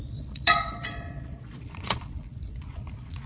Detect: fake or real fake